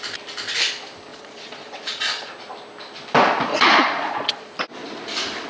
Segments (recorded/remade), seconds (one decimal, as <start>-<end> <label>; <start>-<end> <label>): 0.0-1.1 recorded; 1.1-2.3 remade; 2.3-3.5 recorded; 3.5-4.5 remade; 4.5-5.5 recorded

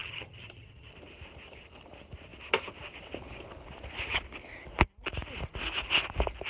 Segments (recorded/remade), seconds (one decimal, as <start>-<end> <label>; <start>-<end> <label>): 0.0-0.9 remade; 0.9-6.5 recorded

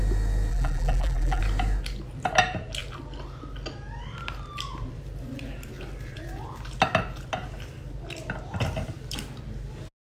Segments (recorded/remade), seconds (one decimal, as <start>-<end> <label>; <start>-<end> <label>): 0.0-0.5 recorded; 0.5-1.4 remade; 1.4-10.1 recorded

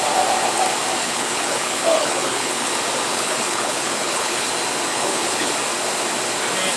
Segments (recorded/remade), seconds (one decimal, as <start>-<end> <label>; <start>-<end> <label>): 0.0-1.0 recorded; 1.0-2.7 remade; 2.7-3.1 recorded; 3.1-4.5 remade; 4.5-4.9 recorded; 4.9-5.5 remade; 5.5-6.8 recorded